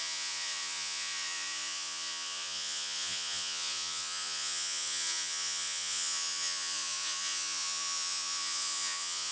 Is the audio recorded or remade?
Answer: remade